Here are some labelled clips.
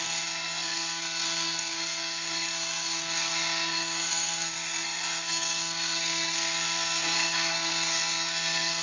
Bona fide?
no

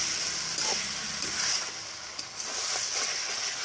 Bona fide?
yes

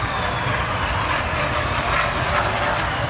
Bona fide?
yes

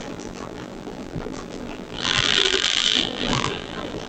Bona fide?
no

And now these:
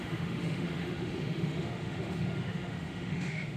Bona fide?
no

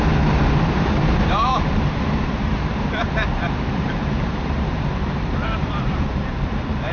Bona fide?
no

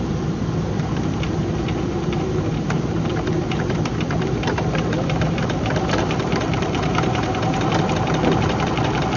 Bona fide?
no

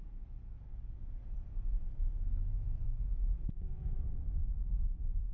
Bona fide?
no